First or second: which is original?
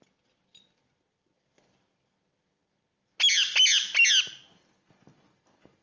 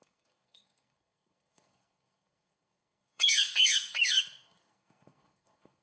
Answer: first